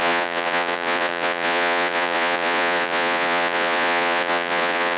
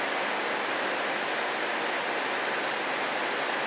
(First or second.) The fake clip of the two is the first